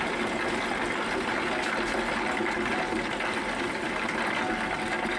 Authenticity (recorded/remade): recorded